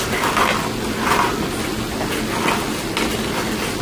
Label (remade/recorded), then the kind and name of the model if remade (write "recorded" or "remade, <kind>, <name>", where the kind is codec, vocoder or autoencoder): recorded